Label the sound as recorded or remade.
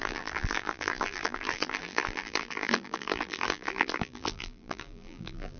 remade